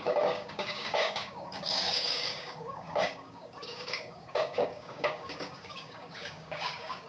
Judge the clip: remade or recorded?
remade